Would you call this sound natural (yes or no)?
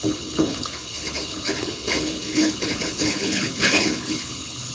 no